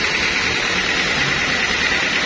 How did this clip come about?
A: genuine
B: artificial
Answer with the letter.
A